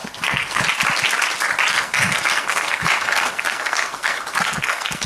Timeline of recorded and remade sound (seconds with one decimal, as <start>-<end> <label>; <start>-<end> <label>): 0.0-0.6 remade; 0.6-1.7 recorded; 1.7-5.1 remade